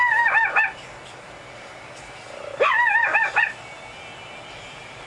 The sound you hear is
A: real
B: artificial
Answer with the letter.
A